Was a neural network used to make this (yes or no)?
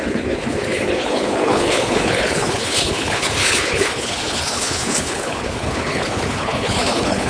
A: yes